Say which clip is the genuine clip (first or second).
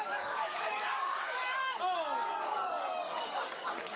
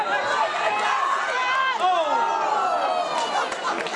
second